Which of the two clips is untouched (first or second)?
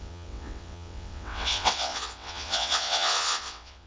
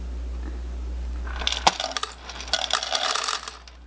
second